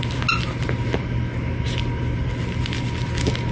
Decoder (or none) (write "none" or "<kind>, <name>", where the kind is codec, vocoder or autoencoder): none